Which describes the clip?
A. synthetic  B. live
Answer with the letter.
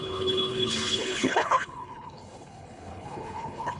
A